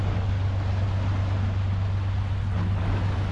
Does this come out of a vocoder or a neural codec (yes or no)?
no